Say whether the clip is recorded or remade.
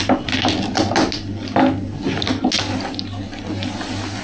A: recorded